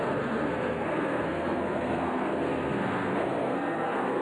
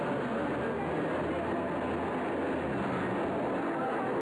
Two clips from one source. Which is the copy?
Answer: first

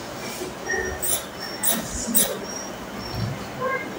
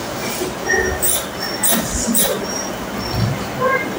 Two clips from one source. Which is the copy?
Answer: second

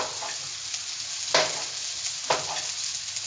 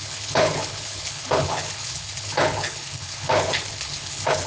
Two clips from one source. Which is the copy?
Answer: second